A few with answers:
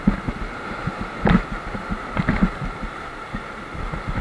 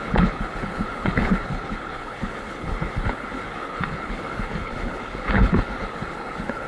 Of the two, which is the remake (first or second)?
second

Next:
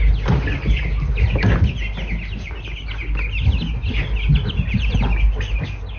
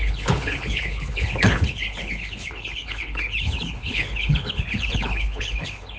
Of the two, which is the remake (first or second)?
second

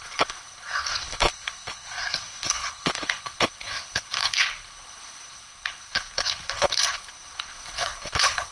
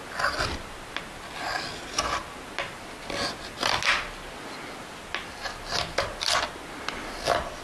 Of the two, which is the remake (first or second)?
first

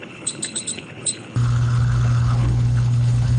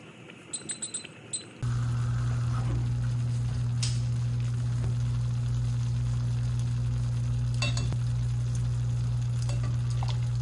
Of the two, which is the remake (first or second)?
first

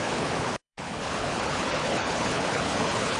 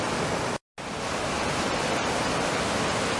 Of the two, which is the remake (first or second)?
first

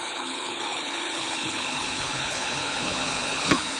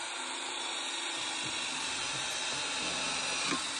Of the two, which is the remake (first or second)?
first